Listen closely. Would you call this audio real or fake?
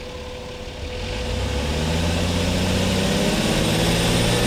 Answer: real